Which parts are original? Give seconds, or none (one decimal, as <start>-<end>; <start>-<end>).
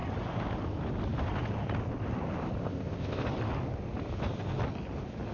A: 0.0-2.6; 3.2-5.3